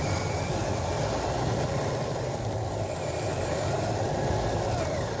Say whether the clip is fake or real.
real